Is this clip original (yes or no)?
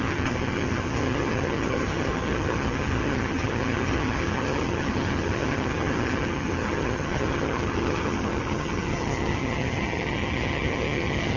no